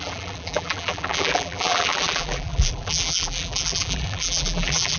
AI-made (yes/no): yes